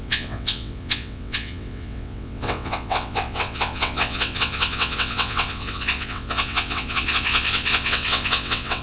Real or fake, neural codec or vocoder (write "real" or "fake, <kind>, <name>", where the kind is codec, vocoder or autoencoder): fake, vocoder, WaveNeXt